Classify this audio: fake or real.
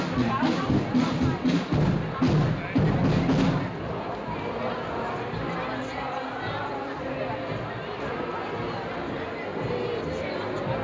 real